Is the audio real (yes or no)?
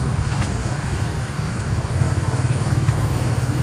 no